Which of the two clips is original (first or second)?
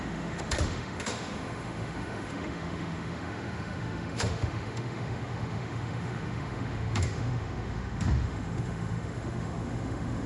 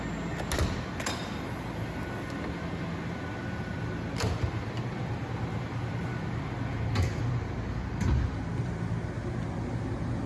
second